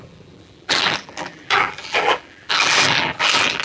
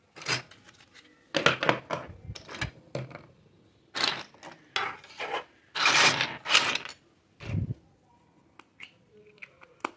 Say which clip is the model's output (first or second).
first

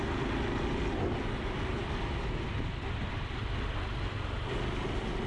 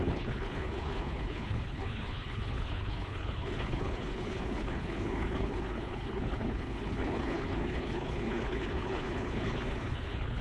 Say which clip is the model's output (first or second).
second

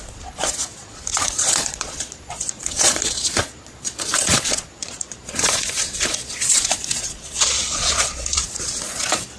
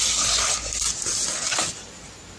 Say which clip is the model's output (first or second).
first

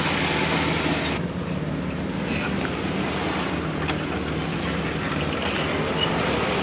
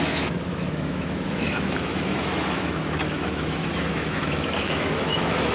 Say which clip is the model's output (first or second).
second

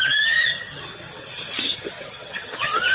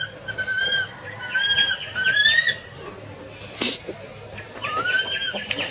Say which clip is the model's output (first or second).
first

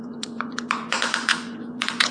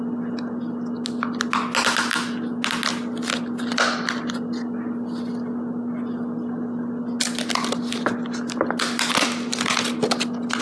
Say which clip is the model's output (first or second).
first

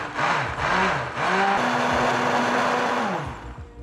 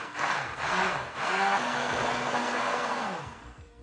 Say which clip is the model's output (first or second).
second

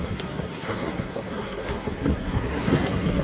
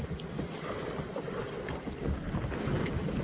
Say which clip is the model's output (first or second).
first